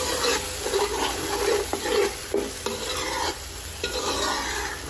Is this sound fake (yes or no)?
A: no